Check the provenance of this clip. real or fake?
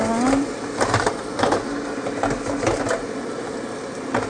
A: real